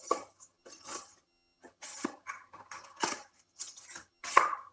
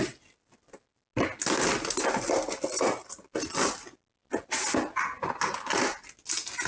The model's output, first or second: first